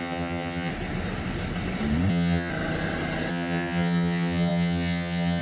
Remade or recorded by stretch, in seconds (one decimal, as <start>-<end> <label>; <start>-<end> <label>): 0.0-0.7 remade; 0.7-2.1 recorded; 2.1-2.5 remade; 2.5-3.3 recorded; 3.3-5.4 remade